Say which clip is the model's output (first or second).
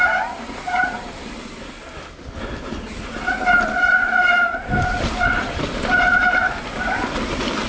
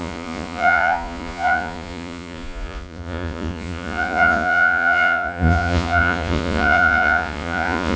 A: second